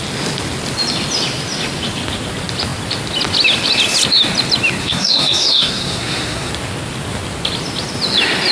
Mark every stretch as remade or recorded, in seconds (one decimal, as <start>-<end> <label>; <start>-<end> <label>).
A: 0.0-4.8 recorded; 4.8-6.5 remade; 6.5-8.5 recorded